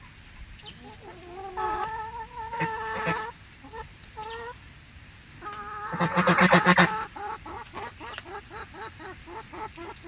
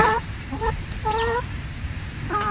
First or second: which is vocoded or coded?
second